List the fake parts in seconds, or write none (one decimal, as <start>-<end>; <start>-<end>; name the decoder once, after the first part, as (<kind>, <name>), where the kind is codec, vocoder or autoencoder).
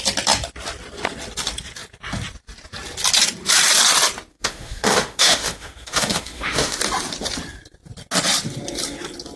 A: 4.3-6.8 (autoencoder, DAC-VAE)